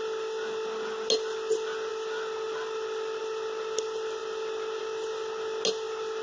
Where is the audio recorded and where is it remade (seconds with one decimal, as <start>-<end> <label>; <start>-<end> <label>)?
0.0-6.2 recorded

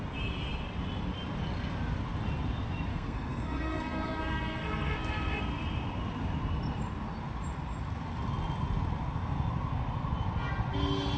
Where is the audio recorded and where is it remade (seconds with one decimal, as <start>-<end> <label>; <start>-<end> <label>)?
0.0-2.9 recorded; 2.9-5.4 remade; 5.4-11.2 recorded